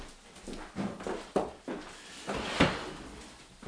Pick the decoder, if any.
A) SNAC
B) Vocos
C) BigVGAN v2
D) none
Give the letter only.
D